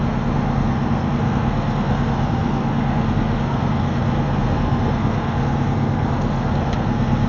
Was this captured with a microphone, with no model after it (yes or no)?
no